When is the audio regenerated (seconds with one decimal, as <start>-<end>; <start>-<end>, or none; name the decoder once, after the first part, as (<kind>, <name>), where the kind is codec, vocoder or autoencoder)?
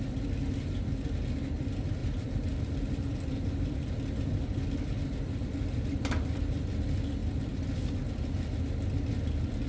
2.0-6.4 (vocoder, BigVGAN v2); 7.2-8.0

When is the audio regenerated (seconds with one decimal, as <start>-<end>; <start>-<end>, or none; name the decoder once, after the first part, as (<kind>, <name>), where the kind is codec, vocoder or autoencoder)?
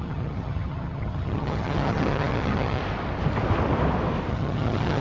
0.0-2.8 (vocoder, HiFi-GAN); 4.3-5.0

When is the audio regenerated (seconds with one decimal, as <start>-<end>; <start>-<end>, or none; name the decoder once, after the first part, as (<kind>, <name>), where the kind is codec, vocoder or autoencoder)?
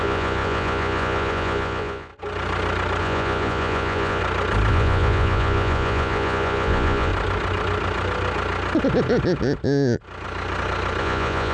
0.0-2.1 (vocoder, Vocos); 3.0-4.2; 4.7-7.1; 11.0-11.5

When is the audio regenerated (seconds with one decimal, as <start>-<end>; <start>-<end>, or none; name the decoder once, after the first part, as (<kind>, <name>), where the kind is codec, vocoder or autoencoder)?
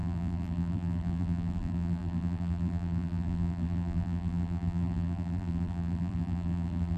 0.0-7.0 (vocoder, BigVGAN v2)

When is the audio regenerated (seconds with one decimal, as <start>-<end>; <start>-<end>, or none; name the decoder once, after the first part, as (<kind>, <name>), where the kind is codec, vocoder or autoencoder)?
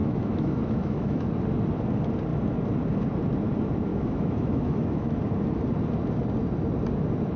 0.0-1.3 (autoencoder, DAC-VAE); 3.9-5.2